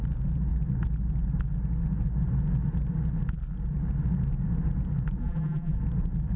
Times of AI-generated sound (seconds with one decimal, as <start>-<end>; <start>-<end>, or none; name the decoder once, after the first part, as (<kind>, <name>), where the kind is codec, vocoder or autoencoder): 5.2-5.8 (vocoder, BigVGAN v2)